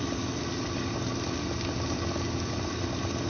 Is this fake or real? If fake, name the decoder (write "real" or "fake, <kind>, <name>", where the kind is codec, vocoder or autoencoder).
real